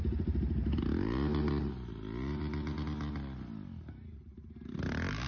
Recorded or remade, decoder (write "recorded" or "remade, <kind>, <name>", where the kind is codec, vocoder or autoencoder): recorded